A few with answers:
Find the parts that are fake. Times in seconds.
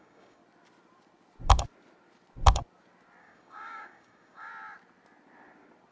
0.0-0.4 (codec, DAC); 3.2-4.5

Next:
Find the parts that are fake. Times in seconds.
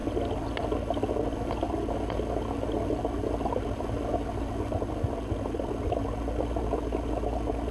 none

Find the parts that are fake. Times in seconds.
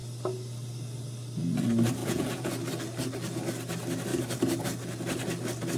2.0-2.5 (vocoder, Vocos)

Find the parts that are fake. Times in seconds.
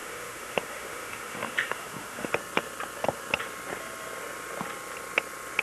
0.0-2.3 (autoencoder, DAC-VAE)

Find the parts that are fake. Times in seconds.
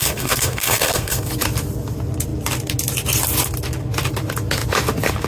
0.0-1.3 (codec, SNAC)